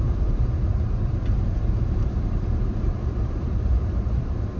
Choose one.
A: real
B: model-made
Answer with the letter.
B